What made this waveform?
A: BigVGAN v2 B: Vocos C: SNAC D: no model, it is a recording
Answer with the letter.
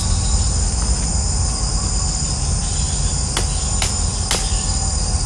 D